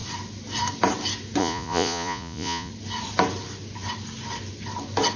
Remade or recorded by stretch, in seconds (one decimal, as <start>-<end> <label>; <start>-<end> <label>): 0.0-1.4 recorded; 1.4-2.7 remade; 2.7-5.2 recorded

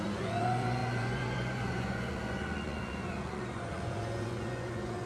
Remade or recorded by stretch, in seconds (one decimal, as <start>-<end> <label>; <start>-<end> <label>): 0.0-5.1 remade

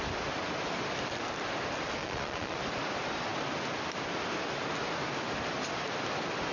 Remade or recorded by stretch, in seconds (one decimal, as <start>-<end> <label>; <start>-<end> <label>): 0.0-2.0 recorded; 2.0-2.6 remade; 2.6-6.5 recorded